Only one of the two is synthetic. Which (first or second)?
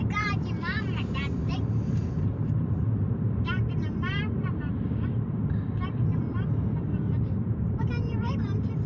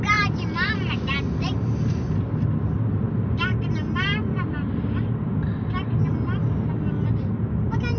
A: first